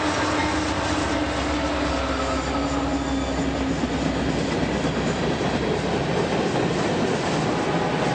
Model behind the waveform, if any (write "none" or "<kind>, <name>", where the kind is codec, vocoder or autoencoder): none